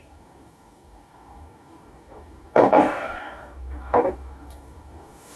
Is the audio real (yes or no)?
no